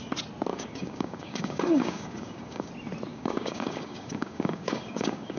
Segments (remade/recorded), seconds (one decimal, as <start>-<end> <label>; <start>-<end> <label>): 0.0-0.5 recorded; 0.5-2.7 remade; 2.7-3.1 recorded; 3.1-5.4 remade